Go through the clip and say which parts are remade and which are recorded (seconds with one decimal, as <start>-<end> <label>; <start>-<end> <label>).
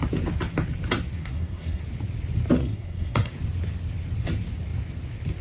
0.0-1.2 recorded; 1.2-1.8 remade; 1.8-2.6 recorded; 2.6-3.3 remade; 3.3-5.4 recorded